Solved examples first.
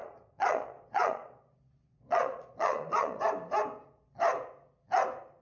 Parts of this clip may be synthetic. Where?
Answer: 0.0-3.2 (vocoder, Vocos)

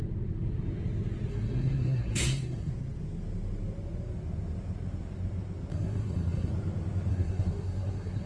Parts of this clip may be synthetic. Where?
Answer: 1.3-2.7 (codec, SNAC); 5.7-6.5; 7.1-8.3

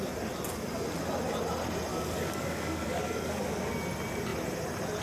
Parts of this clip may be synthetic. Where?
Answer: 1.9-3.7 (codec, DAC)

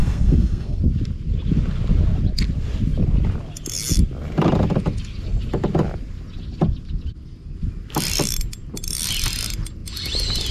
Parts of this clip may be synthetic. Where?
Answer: 0.0-0.8 (codec, SNAC)

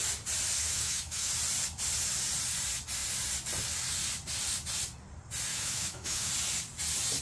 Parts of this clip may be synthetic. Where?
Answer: 0.6-1.3 (autoencoder, DAC-VAE); 5.5-6.3

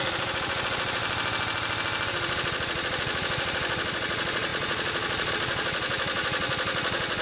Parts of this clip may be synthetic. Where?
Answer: 0.0-1.0 (vocoder, Vocos); 2.1-7.2

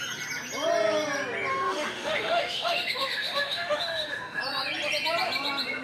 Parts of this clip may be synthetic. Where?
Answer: 1.5-4.4 (autoencoder, DAC-VAE)